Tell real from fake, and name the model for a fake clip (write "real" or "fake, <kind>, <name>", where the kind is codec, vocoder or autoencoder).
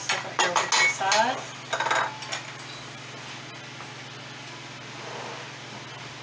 real